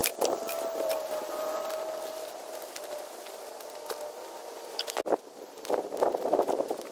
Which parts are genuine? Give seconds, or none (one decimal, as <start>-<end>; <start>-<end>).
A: 1.8-6.9